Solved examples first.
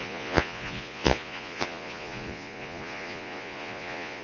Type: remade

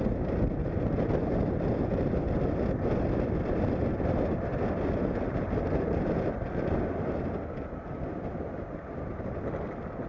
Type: recorded